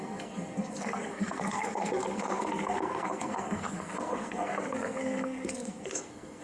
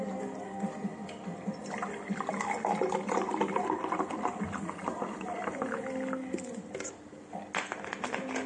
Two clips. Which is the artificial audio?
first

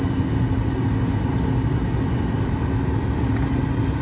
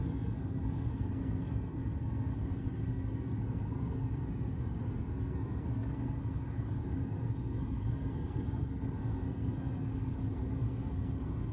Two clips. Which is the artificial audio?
second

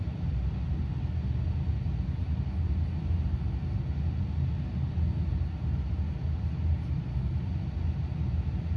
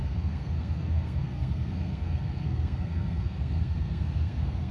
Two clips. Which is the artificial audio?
second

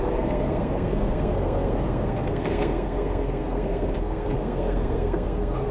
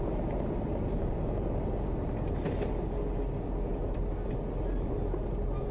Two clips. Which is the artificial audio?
first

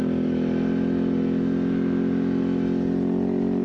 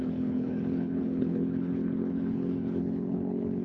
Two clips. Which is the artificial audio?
second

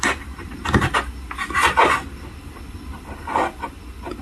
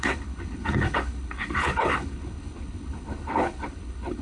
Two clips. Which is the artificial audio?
second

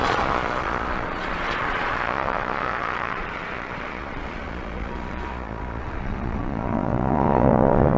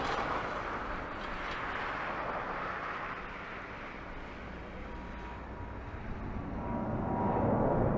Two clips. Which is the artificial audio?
first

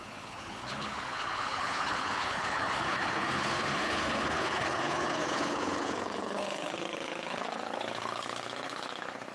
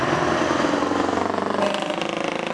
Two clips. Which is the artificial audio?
first